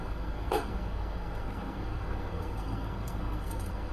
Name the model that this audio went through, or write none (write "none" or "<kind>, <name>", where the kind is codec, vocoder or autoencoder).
codec, SNAC